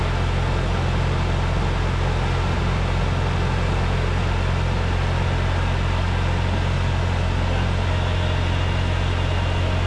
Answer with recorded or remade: recorded